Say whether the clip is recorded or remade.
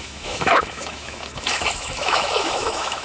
remade